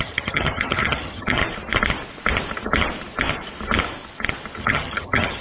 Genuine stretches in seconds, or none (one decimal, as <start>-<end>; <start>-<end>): 1.4-4.6